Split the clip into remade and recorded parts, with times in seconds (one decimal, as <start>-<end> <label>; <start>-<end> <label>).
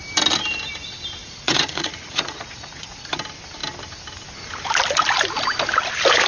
0.0-1.2 recorded; 1.2-3.1 remade; 3.1-6.3 recorded